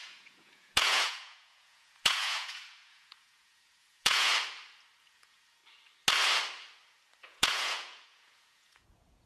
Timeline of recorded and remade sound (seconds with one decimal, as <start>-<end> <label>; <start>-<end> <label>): 0.0-4.3 remade; 4.3-5.0 recorded; 5.0-5.6 remade; 5.6-7.2 recorded; 7.2-9.3 remade